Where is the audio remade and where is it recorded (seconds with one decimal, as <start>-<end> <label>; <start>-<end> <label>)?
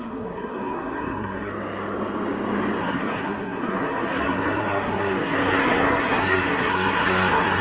0.0-1.5 remade; 1.5-2.8 recorded; 2.8-7.6 remade